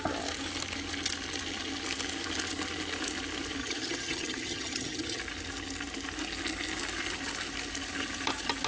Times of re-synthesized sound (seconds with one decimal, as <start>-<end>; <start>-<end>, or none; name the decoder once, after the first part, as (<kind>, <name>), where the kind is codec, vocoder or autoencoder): 3.6-5.2 (vocoder, HiFi-GAN)